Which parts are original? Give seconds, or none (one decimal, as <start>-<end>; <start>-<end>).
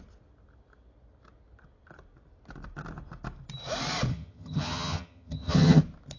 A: 0.0-4.1; 5.8-6.2